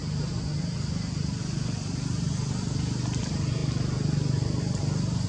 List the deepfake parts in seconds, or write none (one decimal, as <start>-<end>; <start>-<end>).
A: none